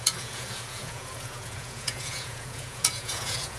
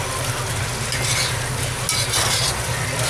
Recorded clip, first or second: second